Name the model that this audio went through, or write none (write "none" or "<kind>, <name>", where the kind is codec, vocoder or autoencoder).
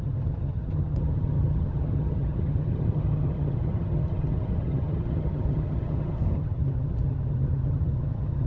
vocoder, HiFi-GAN